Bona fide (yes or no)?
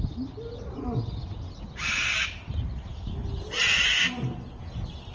yes